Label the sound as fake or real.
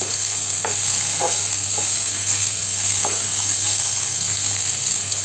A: fake